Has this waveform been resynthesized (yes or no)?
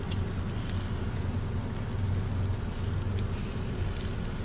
no